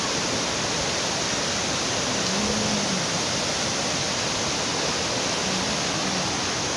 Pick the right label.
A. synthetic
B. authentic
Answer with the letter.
B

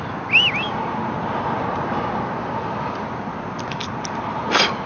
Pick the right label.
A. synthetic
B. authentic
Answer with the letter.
B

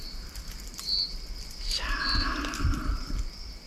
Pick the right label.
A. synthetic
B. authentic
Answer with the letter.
B